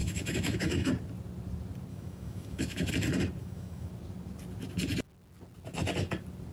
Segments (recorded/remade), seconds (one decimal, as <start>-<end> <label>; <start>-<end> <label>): 0.0-0.9 remade; 0.9-1.9 recorded; 1.9-2.9 remade; 2.9-3.4 recorded; 3.4-3.9 remade; 3.9-6.5 recorded